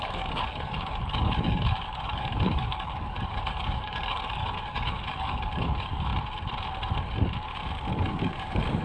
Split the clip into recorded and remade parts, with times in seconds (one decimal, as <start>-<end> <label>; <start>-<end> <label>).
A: 0.0-6.1 remade; 6.1-7.9 recorded; 7.9-8.8 remade